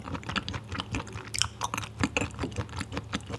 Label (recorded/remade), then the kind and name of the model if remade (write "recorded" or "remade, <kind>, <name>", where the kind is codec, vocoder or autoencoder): recorded